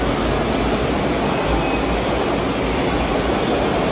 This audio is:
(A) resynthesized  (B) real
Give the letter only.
B